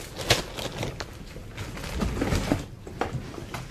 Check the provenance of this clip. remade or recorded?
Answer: recorded